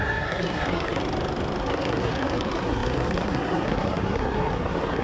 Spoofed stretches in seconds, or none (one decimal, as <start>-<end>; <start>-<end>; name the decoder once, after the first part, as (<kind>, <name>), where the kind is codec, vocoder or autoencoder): 0.0-1.0 (codec, SNAC); 1.6-5.0